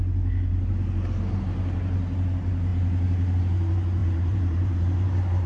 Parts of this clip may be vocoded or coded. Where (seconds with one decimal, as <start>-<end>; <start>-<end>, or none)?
4.0-5.5